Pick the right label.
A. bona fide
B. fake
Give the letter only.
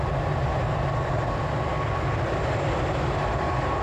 A